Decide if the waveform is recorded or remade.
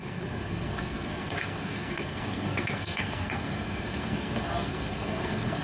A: remade